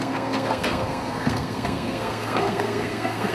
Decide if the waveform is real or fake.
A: fake